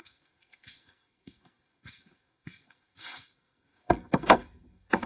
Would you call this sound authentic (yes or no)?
no